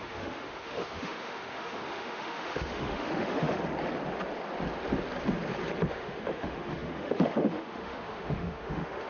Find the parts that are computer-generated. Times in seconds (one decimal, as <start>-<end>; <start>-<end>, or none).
0.0-3.6; 5.9-9.1